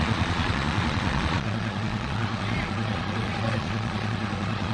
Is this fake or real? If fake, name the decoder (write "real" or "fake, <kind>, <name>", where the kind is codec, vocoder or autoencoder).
fake, vocoder, Vocos